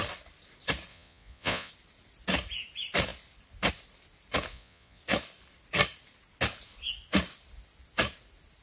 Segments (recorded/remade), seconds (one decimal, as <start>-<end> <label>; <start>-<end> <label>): 0.0-0.9 recorded; 0.9-1.7 remade; 1.7-4.5 recorded; 4.5-5.0 remade; 5.0-8.6 recorded